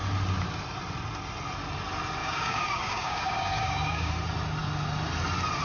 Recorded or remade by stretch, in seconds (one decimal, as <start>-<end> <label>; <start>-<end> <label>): 0.0-2.2 recorded; 2.2-4.1 remade; 4.1-5.6 recorded